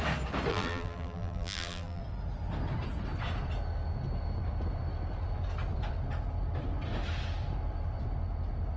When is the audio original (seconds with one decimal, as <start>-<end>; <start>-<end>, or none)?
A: 0.0-0.5; 2.0-8.8